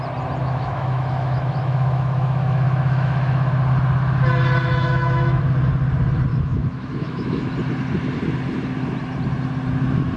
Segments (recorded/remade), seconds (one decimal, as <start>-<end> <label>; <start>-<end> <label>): 0.0-0.4 recorded; 0.4-3.5 remade; 3.5-4.7 recorded; 4.7-5.4 remade; 5.4-6.3 recorded; 6.3-7.5 remade; 7.5-10.2 recorded